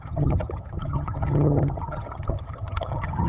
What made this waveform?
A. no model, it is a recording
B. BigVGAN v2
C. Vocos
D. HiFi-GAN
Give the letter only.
D